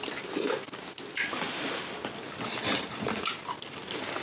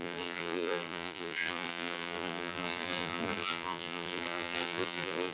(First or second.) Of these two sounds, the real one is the first